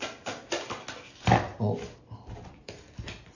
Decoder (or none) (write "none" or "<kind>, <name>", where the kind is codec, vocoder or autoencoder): none